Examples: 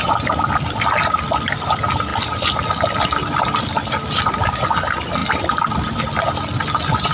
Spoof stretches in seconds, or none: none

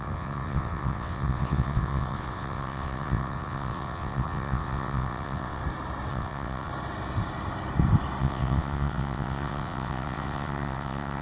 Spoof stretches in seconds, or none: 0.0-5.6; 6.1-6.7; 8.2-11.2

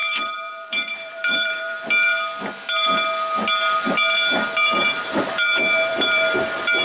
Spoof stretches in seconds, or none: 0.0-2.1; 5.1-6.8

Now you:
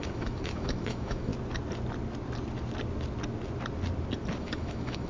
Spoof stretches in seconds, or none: 0.0-1.3; 4.4-5.1

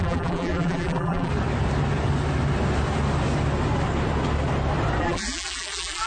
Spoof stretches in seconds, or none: 0.0-1.3; 5.0-6.1

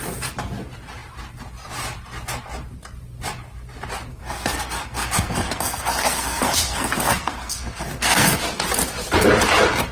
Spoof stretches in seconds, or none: 4.1-8.4

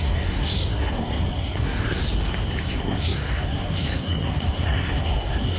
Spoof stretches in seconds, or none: 0.0-2.0; 2.6-5.6